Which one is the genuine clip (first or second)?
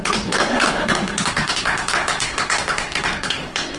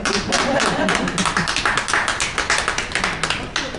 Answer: second